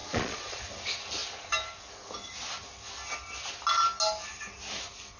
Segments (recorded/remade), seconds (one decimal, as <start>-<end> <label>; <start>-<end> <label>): 0.0-0.6 remade; 0.6-5.2 recorded